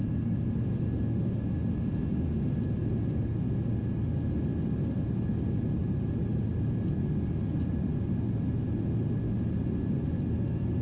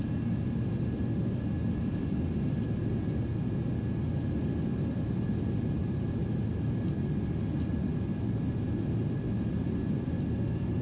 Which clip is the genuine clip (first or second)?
first